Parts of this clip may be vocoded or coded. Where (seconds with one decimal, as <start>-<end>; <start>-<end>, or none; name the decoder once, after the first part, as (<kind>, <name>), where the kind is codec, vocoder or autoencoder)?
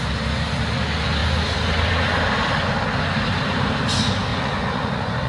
4.3-5.3 (vocoder, Vocos)